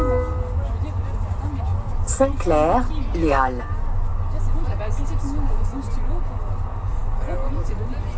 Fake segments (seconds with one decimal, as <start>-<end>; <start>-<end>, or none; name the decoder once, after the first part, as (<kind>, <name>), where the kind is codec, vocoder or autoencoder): none